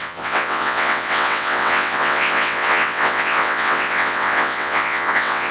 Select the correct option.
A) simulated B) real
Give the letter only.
A